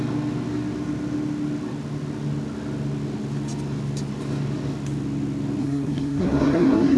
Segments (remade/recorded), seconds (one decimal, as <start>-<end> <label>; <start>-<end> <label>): 0.0-5.6 recorded; 5.6-7.0 remade

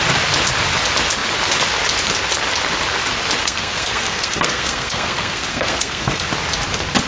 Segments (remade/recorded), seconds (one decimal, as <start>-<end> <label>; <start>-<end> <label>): 0.0-3.4 recorded; 3.4-6.3 remade; 6.3-7.1 recorded

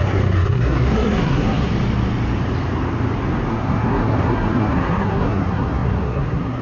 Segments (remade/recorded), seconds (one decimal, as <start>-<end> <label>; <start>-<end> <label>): 0.0-1.7 remade; 1.7-3.5 recorded; 3.5-6.6 remade

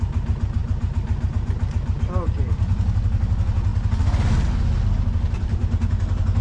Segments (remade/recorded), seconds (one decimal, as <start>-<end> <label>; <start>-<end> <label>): 0.0-6.4 recorded